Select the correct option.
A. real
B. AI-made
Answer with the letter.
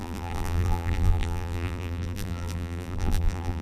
B